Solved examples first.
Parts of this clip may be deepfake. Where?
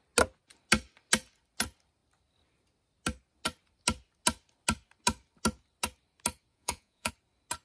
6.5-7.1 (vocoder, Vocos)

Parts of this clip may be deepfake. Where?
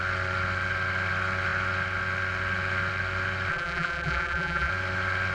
3.5-4.7 (vocoder, BigVGAN v2)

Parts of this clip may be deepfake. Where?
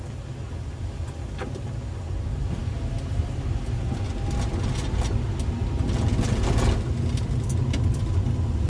none